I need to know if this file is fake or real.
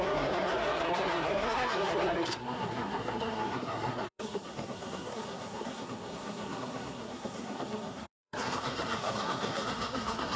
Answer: fake